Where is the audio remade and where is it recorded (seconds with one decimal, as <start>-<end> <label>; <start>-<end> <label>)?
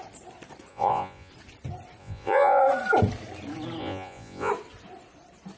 0.0-0.7 recorded; 0.7-1.3 remade; 1.3-2.0 recorded; 2.0-2.6 remade; 2.6-3.8 recorded; 3.8-4.5 remade; 4.5-5.6 recorded